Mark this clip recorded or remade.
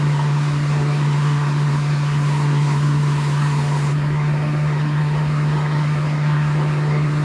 remade